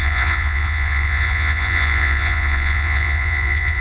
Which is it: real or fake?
fake